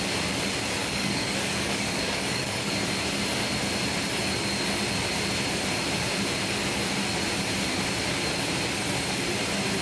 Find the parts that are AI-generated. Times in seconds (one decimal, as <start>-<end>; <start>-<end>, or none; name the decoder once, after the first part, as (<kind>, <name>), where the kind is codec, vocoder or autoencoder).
0.8-2.7 (codec, DAC)